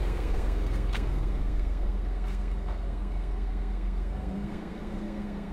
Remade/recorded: remade